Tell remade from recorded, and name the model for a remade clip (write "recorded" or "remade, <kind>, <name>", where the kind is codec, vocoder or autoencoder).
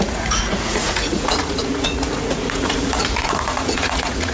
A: remade, vocoder, Vocos